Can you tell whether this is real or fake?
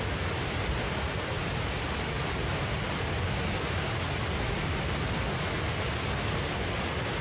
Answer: real